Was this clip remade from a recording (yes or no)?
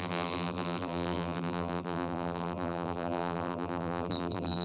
yes